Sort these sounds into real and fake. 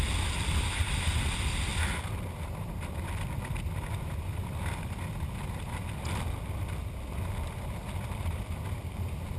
real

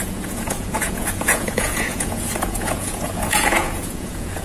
fake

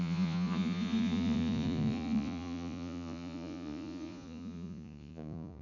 fake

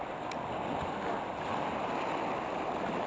real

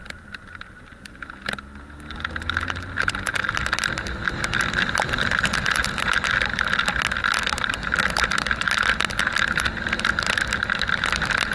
real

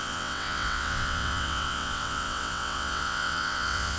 fake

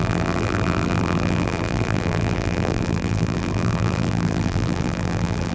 fake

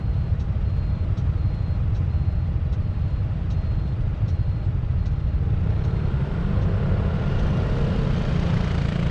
fake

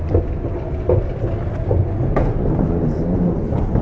real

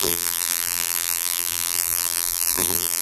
fake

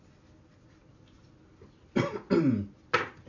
real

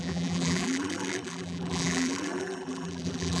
fake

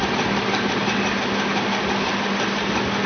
real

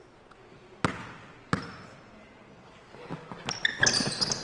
real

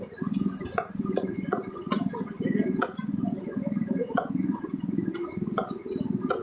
fake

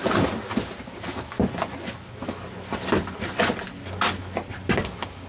real